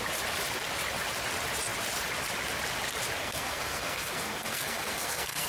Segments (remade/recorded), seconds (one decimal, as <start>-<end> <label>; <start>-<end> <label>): 0.0-3.2 recorded; 3.2-5.5 remade